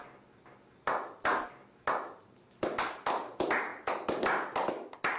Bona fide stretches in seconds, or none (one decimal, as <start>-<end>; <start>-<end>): 0.0-5.2